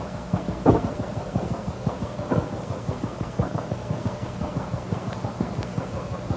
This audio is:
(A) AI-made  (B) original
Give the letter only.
A